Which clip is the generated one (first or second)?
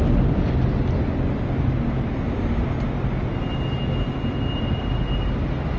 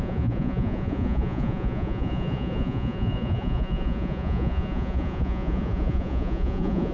second